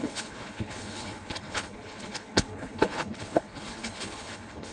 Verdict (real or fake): fake